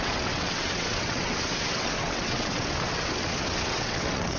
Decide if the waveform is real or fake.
fake